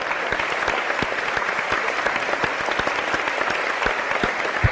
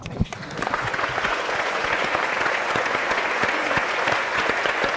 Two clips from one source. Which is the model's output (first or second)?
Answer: second